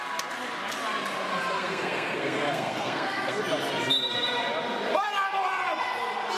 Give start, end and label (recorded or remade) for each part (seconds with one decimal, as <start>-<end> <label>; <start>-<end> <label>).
0.0-1.3 recorded; 1.3-3.4 remade; 3.4-6.4 recorded